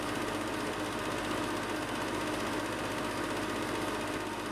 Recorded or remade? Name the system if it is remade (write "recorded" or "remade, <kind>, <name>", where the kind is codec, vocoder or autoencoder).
recorded